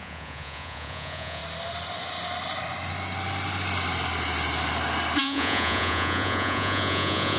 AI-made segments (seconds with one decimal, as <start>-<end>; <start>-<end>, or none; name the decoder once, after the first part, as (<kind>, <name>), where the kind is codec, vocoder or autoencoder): 0.0-1.4 (vocoder, Vocos); 5.2-7.4